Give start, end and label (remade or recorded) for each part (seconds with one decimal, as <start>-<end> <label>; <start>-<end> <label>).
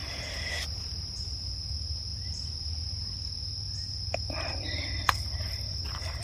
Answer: 0.0-6.2 recorded